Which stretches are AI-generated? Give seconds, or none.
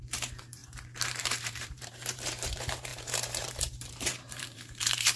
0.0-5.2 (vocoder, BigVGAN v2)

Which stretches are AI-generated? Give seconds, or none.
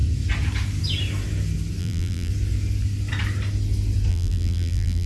1.8-2.3 (vocoder, BigVGAN v2); 4.1-5.1